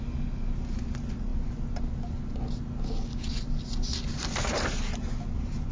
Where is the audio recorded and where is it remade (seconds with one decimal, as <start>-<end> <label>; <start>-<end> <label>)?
0.0-5.7 recorded